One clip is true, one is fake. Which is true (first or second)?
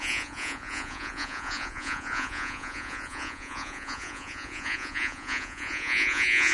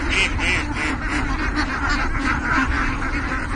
second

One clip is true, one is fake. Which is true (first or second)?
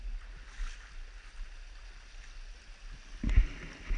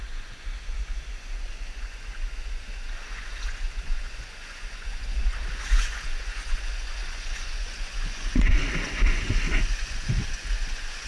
first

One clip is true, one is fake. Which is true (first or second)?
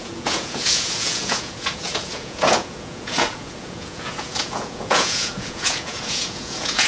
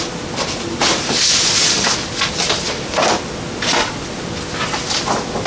second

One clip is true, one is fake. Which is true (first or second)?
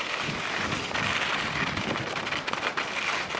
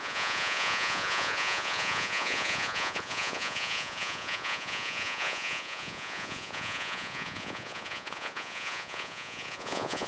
first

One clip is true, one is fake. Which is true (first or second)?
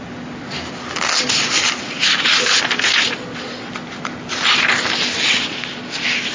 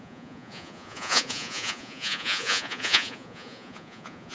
first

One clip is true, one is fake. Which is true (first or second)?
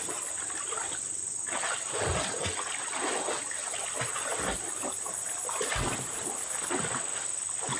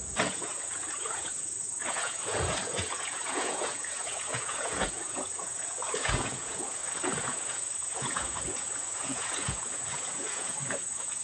first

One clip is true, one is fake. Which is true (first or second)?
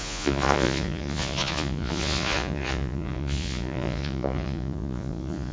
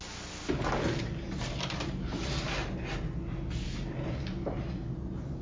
second